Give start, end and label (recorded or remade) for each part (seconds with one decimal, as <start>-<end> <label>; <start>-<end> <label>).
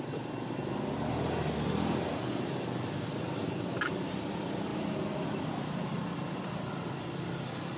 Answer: 0.0-4.7 recorded; 4.7-6.0 remade; 6.0-7.8 recorded